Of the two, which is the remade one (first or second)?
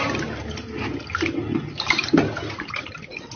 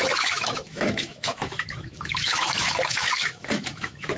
second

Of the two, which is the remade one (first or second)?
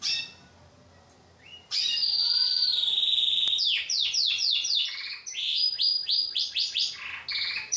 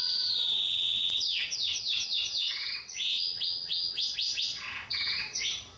second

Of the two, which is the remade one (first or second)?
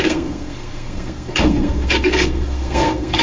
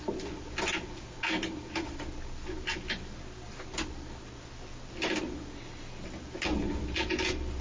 first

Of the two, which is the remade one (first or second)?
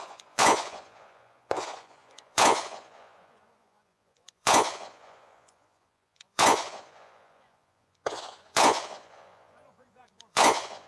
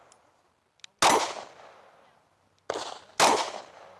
first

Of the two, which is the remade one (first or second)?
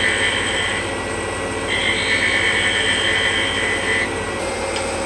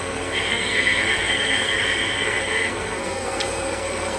second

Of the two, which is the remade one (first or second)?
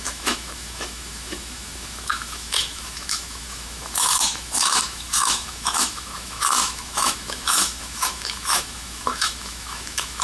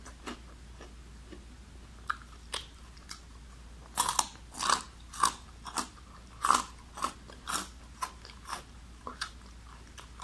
first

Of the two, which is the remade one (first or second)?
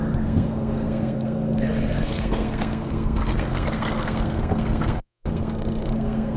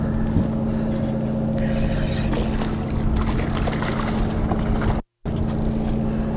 first